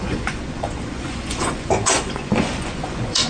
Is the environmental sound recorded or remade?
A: remade